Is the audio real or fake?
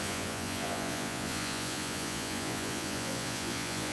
fake